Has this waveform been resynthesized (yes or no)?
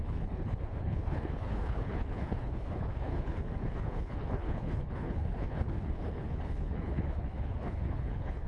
yes